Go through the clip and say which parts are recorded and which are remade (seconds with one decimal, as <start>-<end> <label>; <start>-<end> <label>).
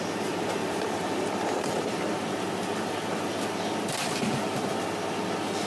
0.0-0.6 recorded; 0.6-2.0 remade; 2.0-5.7 recorded